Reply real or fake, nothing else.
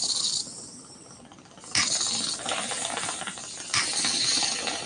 real